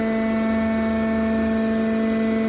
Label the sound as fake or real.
real